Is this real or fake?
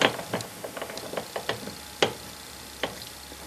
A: real